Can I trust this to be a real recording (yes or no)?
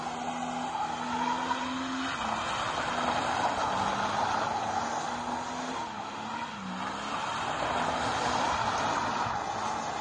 yes